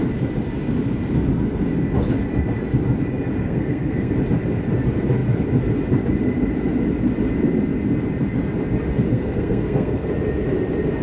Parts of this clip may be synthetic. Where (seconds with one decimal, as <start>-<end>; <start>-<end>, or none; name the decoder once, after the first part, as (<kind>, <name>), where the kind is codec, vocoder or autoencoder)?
3.4-4.1 (codec, SNAC); 9.1-10.1